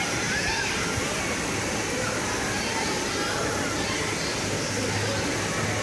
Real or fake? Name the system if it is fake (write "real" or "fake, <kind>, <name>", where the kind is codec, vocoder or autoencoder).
real